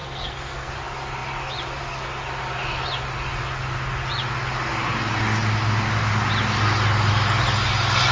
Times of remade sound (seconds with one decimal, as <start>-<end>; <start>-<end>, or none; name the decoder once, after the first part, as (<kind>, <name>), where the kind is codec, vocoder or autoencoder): 0.0-0.7 (codec, SNAC)